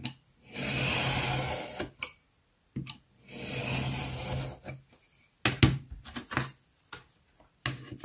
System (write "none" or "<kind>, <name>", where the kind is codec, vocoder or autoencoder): none